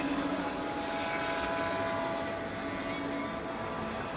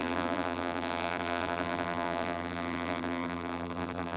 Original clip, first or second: first